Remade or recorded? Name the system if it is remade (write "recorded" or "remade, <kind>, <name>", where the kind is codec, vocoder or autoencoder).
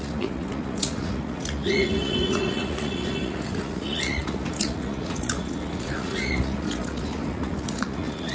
remade, vocoder, Vocos